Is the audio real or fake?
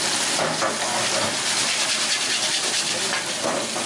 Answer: real